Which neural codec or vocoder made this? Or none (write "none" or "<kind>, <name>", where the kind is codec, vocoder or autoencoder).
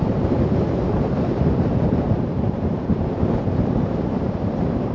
vocoder, BigVGAN v2